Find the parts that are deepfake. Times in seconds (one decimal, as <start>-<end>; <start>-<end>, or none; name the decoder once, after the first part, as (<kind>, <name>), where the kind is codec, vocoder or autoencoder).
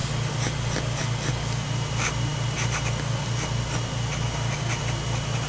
none